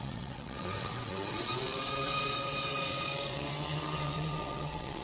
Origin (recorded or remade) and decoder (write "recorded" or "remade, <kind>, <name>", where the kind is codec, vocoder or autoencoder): remade, vocoder, WaveNeXt